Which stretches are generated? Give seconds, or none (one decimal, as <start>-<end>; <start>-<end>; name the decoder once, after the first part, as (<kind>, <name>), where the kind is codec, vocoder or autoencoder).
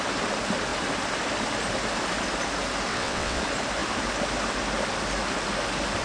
2.9-3.4 (vocoder, WaveNeXt)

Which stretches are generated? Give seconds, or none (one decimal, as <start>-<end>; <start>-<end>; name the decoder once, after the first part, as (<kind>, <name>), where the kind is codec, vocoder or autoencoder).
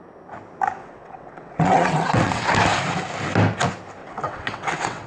0.8-2.5 (vocoder, WaveNeXt); 4.0-5.1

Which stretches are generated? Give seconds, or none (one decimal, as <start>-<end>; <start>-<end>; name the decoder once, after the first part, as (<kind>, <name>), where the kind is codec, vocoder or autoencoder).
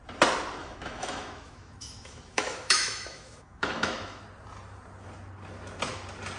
0.6-4.2 (autoencoder, DAC-VAE)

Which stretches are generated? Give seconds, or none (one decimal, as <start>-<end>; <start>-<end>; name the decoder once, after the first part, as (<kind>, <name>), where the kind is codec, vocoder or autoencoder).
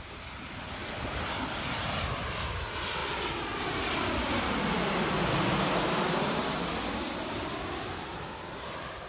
none